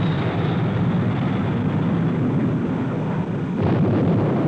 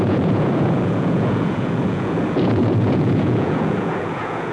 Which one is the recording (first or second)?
first